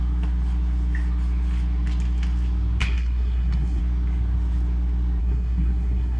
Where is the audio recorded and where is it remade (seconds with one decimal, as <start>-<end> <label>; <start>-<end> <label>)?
0.0-2.8 recorded; 2.8-3.8 remade; 3.8-5.2 recorded; 5.2-6.2 remade